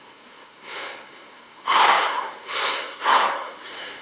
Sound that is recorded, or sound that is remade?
remade